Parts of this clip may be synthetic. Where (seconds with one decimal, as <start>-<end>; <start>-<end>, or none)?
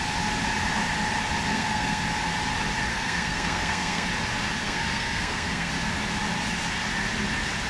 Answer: 1.5-2.0; 2.9-4.1; 4.6-5.7